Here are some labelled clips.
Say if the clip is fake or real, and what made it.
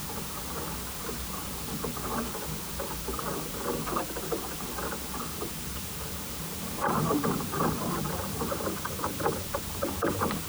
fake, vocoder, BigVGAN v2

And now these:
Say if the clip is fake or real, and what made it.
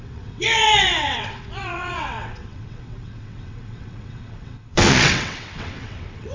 fake, vocoder, WaveNeXt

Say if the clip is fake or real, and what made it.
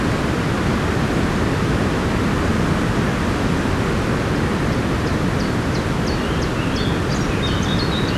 real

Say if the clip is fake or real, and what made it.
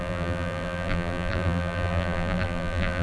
fake, vocoder, BigVGAN v2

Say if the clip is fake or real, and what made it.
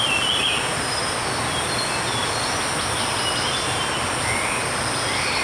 real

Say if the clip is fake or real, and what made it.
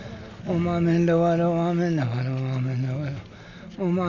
real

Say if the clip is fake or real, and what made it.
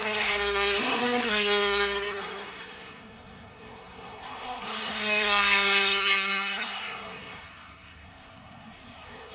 fake, codec, SNAC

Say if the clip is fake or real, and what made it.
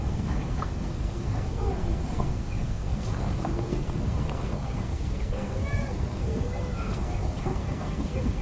fake, codec, SNAC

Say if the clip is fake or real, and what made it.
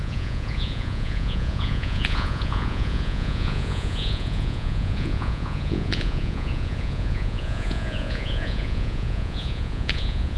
fake, vocoder, Vocos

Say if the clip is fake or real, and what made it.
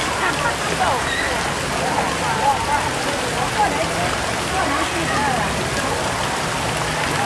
real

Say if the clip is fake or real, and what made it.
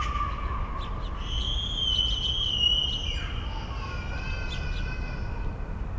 real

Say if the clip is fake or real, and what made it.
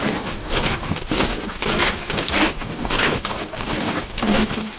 fake, codec, DAC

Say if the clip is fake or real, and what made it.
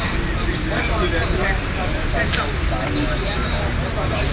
real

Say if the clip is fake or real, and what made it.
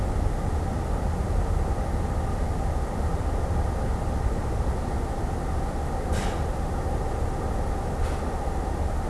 real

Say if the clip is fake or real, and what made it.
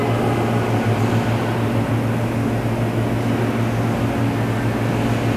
real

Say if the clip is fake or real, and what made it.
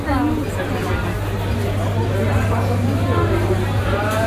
real